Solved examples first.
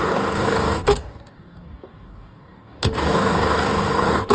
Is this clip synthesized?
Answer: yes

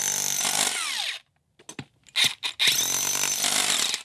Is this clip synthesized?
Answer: no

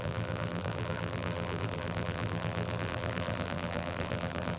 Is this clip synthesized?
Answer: yes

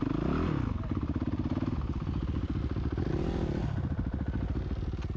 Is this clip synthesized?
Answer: no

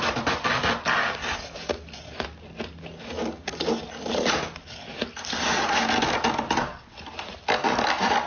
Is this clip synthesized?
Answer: no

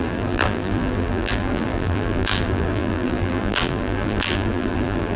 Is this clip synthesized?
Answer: yes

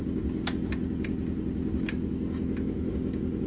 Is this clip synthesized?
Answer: no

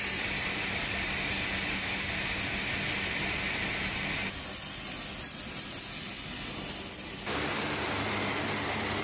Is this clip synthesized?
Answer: no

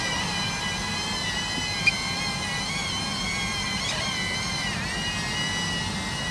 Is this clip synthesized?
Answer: no